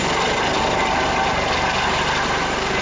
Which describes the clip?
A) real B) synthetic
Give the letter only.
A